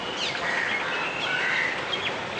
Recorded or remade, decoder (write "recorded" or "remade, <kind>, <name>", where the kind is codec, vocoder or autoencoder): recorded